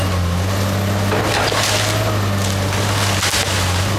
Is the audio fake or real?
real